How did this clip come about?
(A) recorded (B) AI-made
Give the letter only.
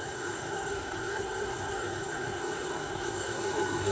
B